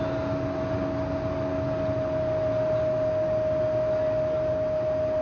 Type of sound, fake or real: real